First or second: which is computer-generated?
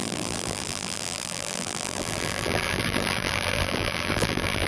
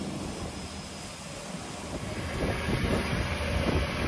first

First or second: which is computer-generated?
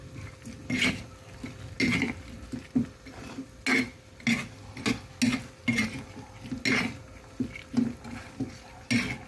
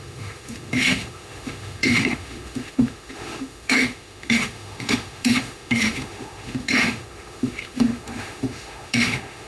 second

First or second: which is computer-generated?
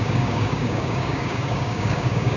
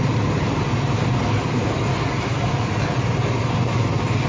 first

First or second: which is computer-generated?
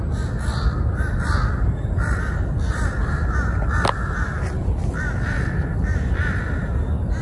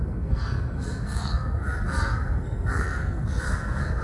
second